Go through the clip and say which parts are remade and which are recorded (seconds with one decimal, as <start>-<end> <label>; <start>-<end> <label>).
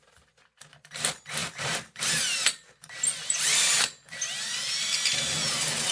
0.0-1.4 recorded; 1.4-4.9 remade; 4.9-5.9 recorded